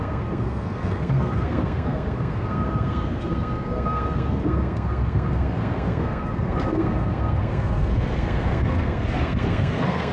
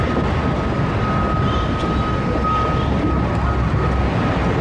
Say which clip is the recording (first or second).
second